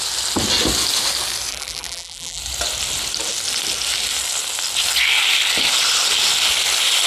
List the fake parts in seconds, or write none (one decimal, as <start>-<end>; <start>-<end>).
1.5-2.4